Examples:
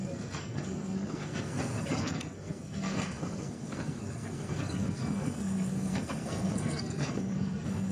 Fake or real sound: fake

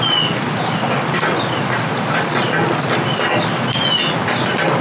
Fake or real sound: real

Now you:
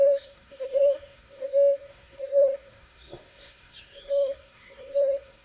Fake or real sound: fake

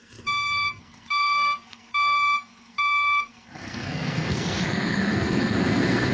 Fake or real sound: fake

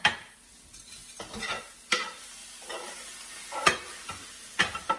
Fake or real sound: real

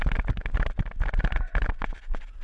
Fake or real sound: real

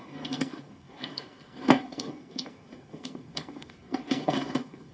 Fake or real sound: fake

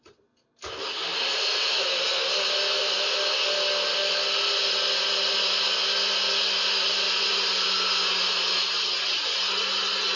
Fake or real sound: real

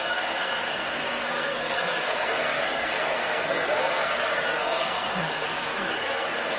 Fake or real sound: fake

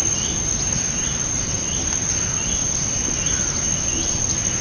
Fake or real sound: real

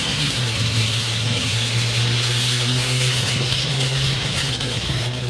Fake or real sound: fake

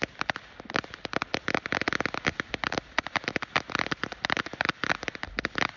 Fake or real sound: real